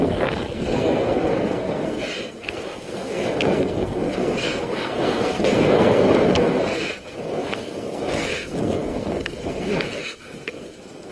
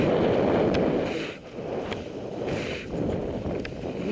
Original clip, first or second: second